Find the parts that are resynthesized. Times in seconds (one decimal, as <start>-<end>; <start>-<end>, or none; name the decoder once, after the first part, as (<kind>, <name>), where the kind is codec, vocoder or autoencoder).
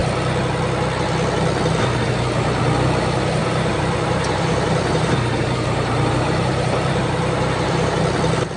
3.4-8.0 (vocoder, BigVGAN v2)